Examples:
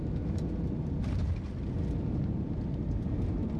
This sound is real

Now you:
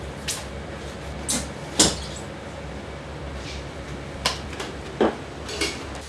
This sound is real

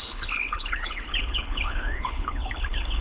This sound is fake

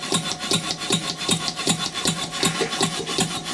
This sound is real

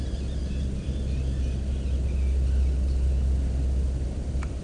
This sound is real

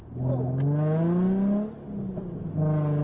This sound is real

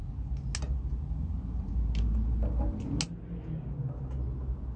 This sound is real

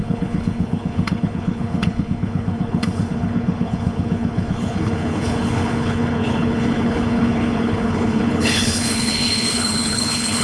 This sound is fake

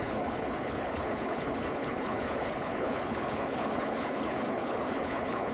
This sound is fake